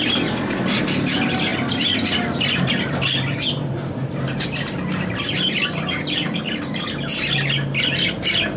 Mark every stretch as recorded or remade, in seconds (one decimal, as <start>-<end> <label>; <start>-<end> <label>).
0.0-8.6 recorded